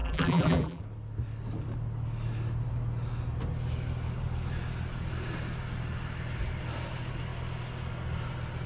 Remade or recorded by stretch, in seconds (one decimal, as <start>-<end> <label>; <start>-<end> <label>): 0.0-0.8 remade; 0.8-8.7 recorded